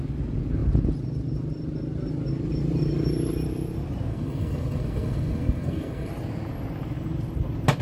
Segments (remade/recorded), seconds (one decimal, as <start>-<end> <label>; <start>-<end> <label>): 0.0-4.1 recorded; 4.1-6.1 remade; 6.1-7.8 recorded